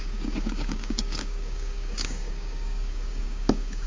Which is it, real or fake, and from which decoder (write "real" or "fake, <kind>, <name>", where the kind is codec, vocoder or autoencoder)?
fake, codec, DAC